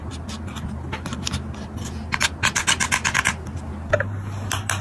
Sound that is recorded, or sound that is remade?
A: recorded